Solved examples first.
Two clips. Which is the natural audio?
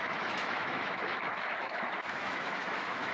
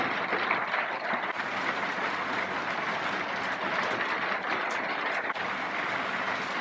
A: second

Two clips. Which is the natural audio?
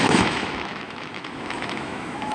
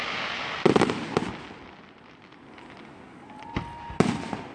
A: second